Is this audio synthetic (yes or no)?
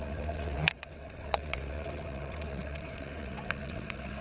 yes